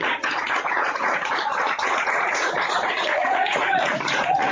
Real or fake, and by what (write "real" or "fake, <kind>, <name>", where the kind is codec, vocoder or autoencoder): fake, vocoder, Vocos